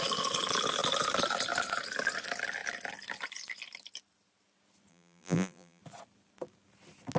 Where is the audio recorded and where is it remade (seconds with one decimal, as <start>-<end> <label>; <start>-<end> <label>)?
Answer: 0.0-4.9 recorded; 4.9-5.8 remade; 5.8-7.2 recorded